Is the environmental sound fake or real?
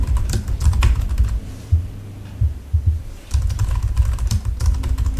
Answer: fake